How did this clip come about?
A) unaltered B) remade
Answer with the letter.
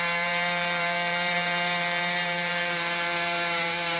B